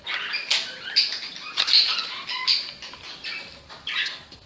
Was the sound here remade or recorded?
recorded